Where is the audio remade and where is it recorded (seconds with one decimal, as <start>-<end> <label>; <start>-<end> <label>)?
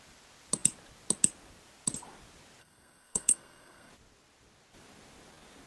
0.0-2.6 recorded; 2.6-3.9 remade; 3.9-5.7 recorded